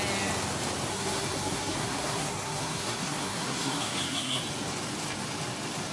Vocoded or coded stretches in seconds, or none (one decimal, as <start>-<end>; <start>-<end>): 0.9-4.4

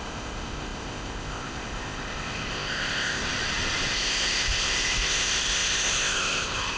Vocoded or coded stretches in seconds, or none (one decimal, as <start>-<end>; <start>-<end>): 0.0-3.2; 3.9-6.8

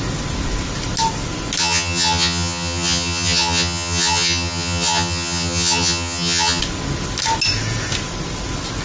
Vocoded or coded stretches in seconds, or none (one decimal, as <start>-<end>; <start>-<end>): 1.6-6.6